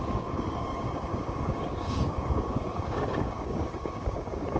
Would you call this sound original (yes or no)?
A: no